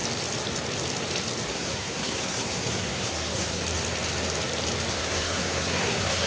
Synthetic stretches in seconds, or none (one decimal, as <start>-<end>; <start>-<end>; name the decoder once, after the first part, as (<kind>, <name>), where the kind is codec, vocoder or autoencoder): 1.5-3.6 (codec, SNAC); 4.9-6.3